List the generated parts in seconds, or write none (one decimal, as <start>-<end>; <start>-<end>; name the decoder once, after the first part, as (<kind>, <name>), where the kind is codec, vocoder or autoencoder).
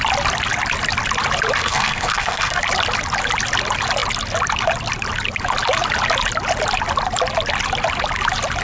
1.6-2.6 (codec, SNAC)